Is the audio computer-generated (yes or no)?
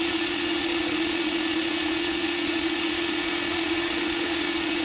yes